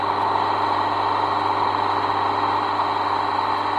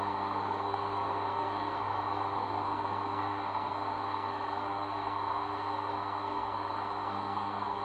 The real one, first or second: first